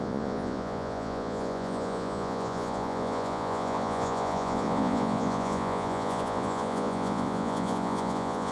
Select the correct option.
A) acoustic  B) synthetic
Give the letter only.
B